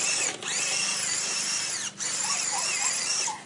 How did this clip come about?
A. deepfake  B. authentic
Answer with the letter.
A